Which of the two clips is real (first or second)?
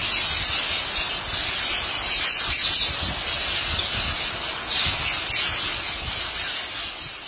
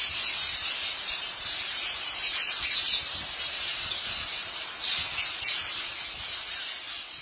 first